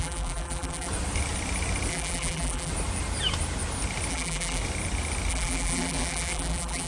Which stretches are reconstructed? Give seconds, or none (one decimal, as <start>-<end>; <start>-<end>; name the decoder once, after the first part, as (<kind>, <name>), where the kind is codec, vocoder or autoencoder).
0.0-0.9 (vocoder, BigVGAN v2); 1.9-2.7; 4.1-4.6; 5.3-6.9